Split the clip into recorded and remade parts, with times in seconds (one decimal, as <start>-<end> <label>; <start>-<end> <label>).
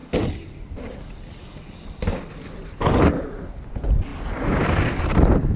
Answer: 0.0-0.7 remade; 0.7-2.1 recorded; 2.1-2.8 remade; 2.8-4.1 recorded; 4.1-5.6 remade